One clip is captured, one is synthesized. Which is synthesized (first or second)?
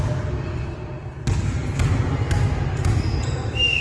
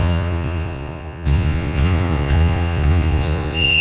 second